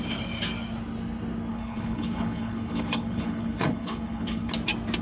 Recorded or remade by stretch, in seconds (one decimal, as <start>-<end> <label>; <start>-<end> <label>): 0.0-1.5 recorded; 1.5-4.5 remade; 4.5-5.0 recorded